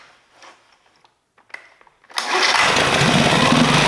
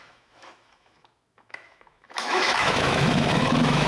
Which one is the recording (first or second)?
first